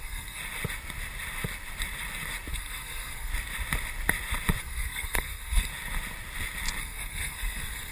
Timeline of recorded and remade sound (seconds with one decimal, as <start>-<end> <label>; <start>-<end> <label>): 0.0-0.4 remade; 0.4-2.5 recorded; 2.5-3.3 remade; 3.3-4.6 recorded; 4.6-5.7 remade; 5.7-6.8 recorded; 6.8-7.9 remade